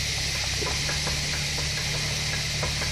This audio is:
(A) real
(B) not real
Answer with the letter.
A